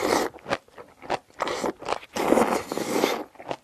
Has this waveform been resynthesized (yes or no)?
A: no